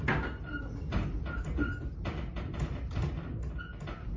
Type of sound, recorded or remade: recorded